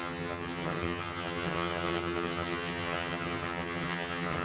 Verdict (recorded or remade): remade